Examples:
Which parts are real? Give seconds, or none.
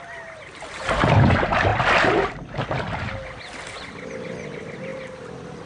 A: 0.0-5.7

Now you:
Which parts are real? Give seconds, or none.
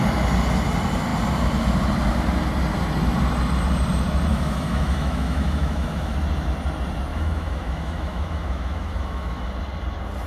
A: 0.0-4.3; 6.1-7.1; 9.5-10.3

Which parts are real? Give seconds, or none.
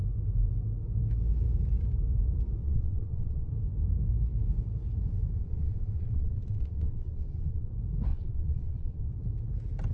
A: 0.0-2.6; 3.5-5.4; 7.7-8.1; 9.1-9.9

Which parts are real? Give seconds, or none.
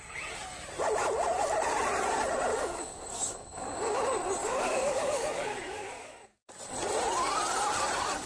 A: 0.0-2.5; 4.0-4.4; 6.5-8.3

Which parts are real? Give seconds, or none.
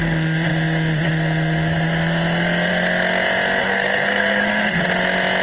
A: 0.0-3.6; 4.8-5.4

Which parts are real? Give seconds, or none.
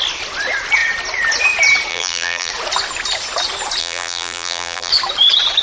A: 0.0-1.9; 2.5-3.8; 4.9-5.6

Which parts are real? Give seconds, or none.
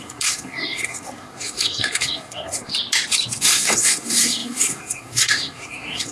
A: 2.7-3.4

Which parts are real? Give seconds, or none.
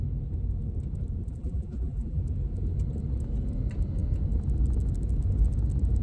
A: 0.0-1.3; 2.2-6.0